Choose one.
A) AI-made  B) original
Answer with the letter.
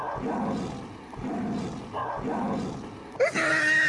B